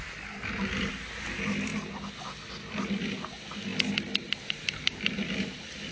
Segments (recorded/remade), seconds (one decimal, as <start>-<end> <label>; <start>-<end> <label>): 0.0-5.9 recorded